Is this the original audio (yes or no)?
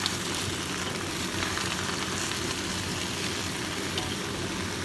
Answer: yes